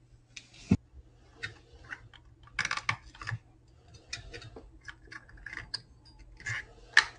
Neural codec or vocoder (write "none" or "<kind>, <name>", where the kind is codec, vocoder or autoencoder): none